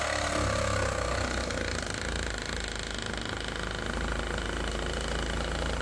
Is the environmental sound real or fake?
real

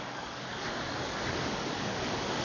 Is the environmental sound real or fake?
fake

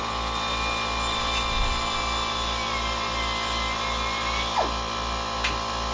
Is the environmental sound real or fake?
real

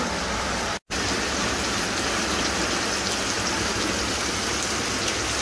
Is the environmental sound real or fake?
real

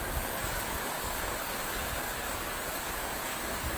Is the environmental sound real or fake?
fake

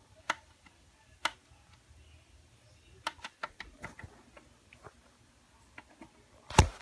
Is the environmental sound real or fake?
real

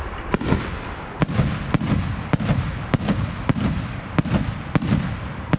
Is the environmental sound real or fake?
real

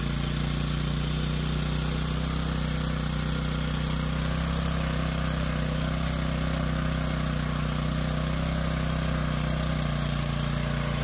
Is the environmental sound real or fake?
real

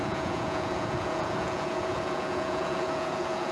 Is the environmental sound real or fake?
fake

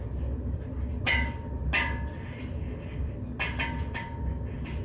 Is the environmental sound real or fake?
real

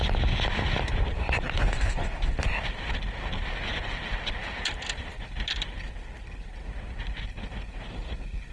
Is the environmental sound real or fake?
real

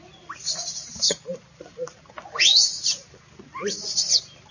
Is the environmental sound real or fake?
real